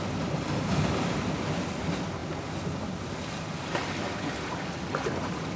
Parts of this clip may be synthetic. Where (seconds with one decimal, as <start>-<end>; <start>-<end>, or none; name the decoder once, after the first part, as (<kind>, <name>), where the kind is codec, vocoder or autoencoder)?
none